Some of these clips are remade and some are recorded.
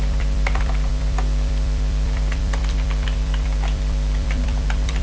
remade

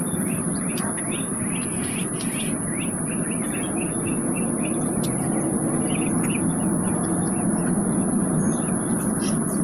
recorded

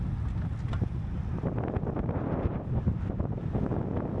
recorded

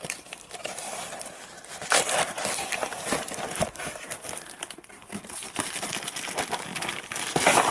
remade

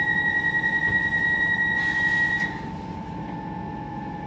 recorded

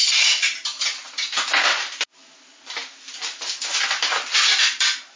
recorded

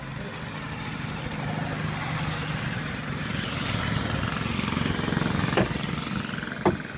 recorded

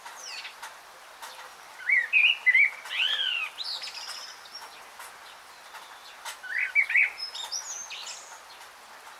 recorded